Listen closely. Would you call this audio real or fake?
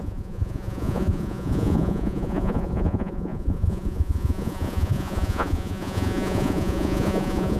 fake